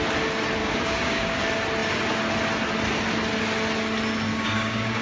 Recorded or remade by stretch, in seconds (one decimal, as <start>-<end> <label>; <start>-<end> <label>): 0.0-0.6 recorded; 0.6-1.4 remade; 1.4-4.3 recorded; 4.3-5.0 remade